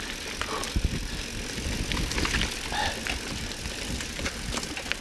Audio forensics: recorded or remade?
recorded